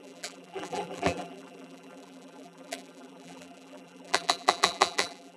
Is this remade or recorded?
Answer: remade